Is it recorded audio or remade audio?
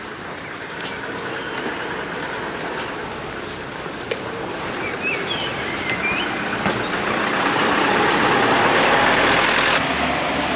recorded